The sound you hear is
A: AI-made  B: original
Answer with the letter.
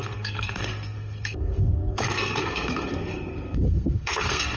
A